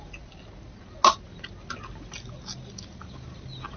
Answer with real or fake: real